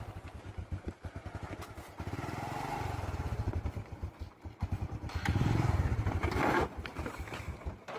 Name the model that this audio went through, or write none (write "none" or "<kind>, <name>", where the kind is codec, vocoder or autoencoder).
vocoder, BigVGAN v2